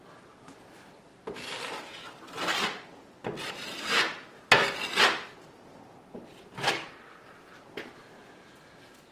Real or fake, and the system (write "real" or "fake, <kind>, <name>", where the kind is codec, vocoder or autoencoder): real